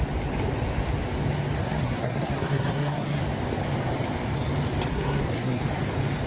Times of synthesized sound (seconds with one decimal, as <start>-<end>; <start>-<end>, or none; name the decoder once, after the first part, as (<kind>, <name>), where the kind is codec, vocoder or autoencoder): 1.6-3.2 (codec, SNAC); 4.9-5.6